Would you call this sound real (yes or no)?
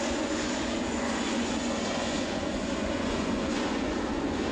no